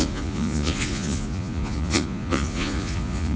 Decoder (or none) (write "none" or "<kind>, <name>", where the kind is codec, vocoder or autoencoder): vocoder, Vocos